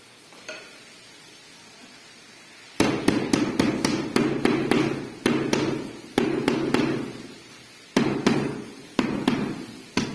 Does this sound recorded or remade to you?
recorded